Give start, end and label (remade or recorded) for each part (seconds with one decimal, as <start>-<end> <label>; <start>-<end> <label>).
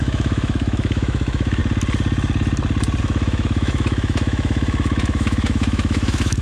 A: 0.0-1.6 remade; 1.6-3.0 recorded; 3.0-6.4 remade